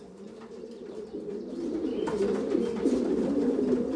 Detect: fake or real real